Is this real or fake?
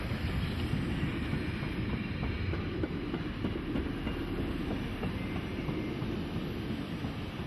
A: real